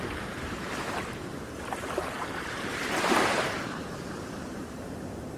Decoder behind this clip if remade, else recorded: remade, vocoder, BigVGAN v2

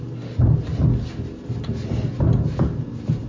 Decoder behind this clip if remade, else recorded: recorded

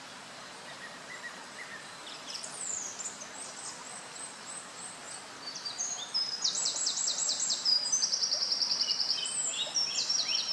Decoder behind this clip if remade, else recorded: remade, vocoder, BigVGAN v2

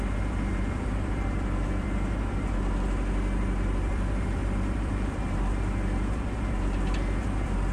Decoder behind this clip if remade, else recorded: remade, vocoder, BigVGAN v2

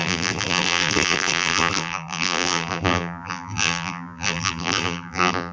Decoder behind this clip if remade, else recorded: remade, vocoder, BigVGAN v2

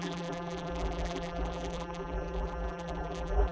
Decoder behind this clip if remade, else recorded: remade, vocoder, BigVGAN v2